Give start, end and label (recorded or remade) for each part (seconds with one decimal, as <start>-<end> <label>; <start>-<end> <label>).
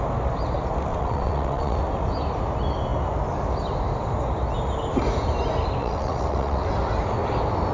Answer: 0.0-0.9 recorded; 0.9-1.8 remade; 1.8-5.8 recorded; 5.8-6.7 remade; 6.7-7.7 recorded